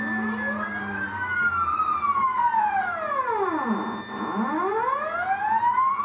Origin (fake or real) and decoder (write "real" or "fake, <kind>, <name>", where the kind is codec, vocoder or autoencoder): real